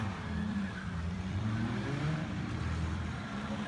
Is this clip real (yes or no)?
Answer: no